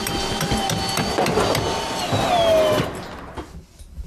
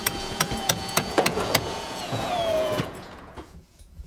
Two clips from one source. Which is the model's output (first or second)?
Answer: second